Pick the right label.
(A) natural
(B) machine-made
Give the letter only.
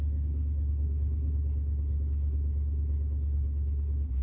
B